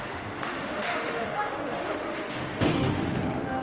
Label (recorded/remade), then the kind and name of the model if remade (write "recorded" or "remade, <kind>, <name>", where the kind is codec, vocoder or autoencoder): remade, autoencoder, DAC-VAE